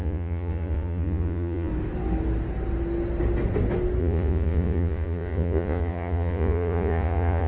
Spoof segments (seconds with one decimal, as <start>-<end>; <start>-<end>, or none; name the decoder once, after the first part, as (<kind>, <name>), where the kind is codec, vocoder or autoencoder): 0.0-1.7 (vocoder, Vocos); 4.0-7.5